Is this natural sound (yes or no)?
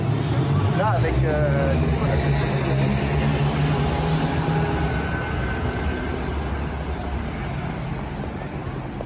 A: yes